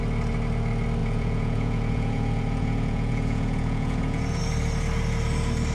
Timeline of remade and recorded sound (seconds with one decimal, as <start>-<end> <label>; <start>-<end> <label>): 0.0-1.0 recorded; 1.0-4.4 remade; 4.4-5.7 recorded